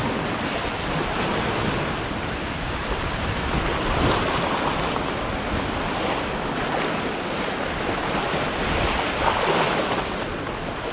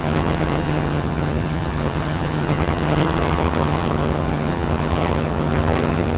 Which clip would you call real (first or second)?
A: first